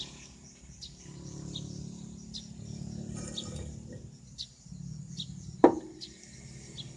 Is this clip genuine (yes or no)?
yes